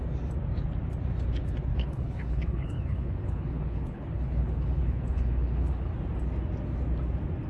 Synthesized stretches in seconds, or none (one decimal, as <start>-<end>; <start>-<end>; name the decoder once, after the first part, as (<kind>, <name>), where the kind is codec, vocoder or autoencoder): 1.7-5.9 (codec, HILCodec)